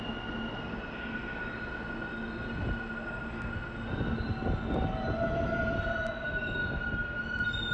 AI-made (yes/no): no